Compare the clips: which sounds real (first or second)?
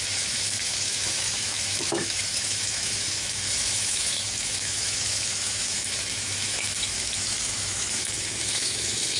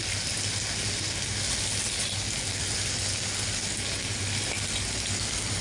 second